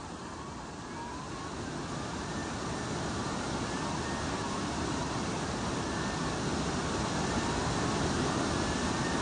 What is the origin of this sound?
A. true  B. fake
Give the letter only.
A